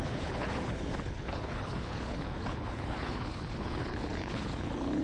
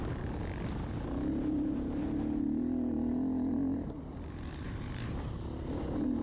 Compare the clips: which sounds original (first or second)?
second